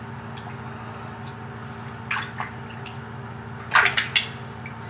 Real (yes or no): yes